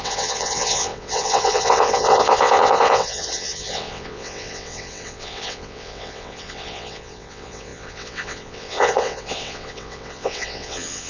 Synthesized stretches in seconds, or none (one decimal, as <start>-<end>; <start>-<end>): 0.0-11.1